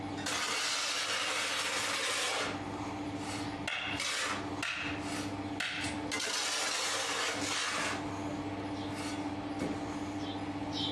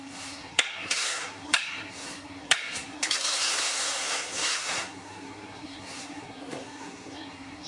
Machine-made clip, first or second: second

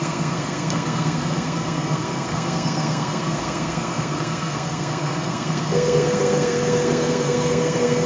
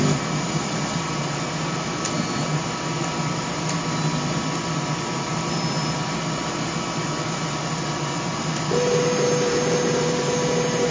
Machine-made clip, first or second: first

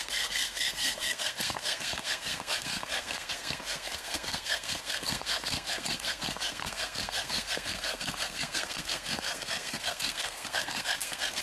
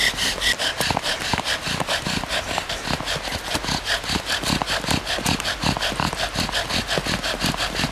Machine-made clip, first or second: first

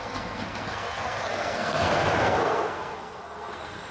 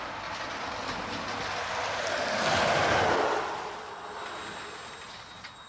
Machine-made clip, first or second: first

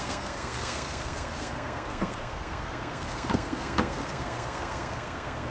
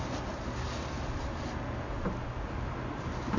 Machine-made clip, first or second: first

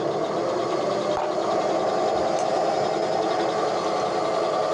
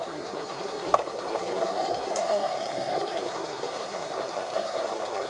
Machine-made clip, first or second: second